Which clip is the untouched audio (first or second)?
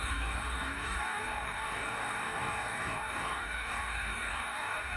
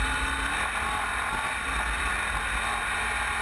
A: second